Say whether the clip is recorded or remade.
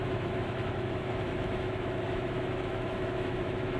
remade